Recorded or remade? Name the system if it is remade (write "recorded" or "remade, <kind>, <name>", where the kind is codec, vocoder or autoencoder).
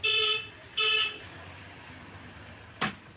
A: remade, vocoder, BigVGAN v2